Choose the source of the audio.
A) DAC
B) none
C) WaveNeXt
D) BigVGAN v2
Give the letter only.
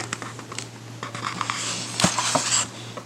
B